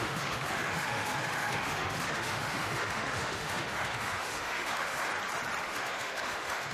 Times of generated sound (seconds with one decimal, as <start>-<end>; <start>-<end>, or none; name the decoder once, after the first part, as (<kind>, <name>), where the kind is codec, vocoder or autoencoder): 0.0-5.1 (autoencoder, DAC-VAE); 5.6-6.7